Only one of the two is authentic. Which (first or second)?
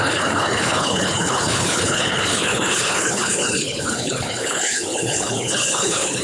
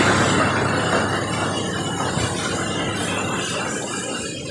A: second